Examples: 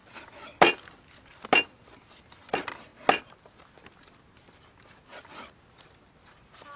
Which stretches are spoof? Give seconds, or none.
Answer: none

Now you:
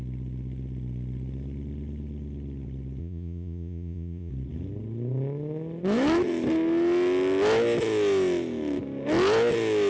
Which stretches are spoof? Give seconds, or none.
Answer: 3.0-4.3